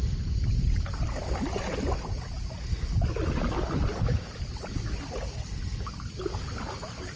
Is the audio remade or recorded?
recorded